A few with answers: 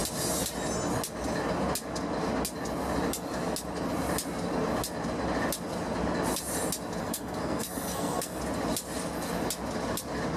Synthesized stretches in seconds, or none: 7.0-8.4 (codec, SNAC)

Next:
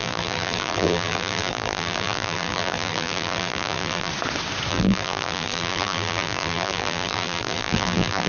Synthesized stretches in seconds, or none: 0.0-4.1 (vocoder, BigVGAN v2); 4.7-8.3